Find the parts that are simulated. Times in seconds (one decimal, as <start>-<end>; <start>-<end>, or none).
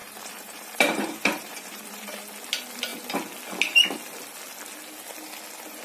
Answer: 0.0-2.3